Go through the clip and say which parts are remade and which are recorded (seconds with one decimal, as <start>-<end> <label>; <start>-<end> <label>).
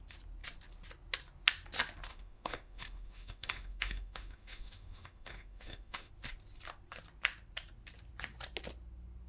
0.0-2.1 recorded; 2.1-6.1 remade; 6.1-9.3 recorded